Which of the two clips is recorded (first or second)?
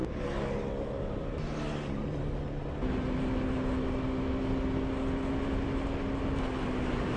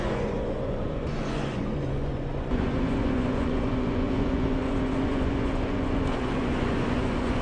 first